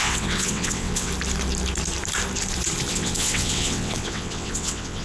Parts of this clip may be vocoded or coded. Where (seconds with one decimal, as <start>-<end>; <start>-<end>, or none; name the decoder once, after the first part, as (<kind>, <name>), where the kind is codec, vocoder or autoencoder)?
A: 0.0-1.1 (vocoder, WaveNeXt); 2.9-5.0

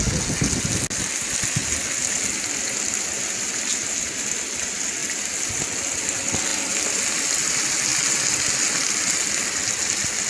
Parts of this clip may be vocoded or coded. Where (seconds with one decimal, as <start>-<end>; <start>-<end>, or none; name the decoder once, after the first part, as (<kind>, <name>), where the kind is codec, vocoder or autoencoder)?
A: none